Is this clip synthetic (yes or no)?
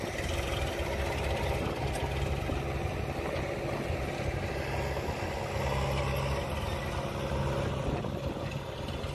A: no